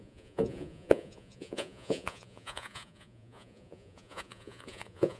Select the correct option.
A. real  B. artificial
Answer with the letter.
B